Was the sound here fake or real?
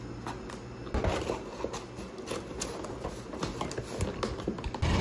real